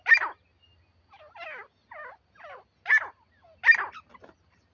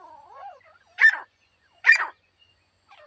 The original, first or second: first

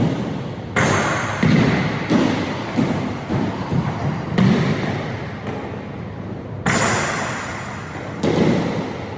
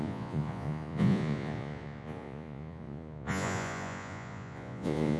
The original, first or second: first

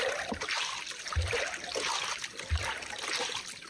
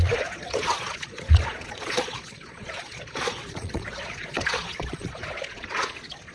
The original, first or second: first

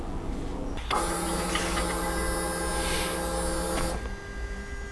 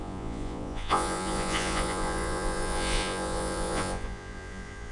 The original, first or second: first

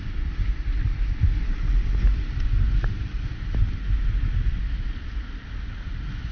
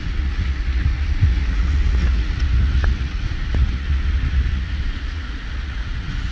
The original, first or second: first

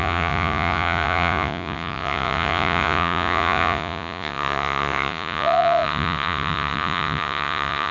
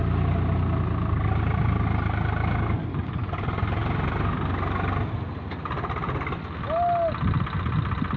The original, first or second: second